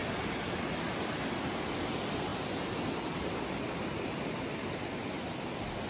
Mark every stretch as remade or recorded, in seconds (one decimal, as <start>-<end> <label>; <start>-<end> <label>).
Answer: 0.0-5.9 recorded